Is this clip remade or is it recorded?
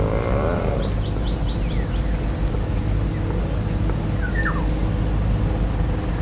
recorded